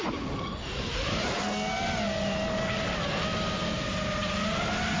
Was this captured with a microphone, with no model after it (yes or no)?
yes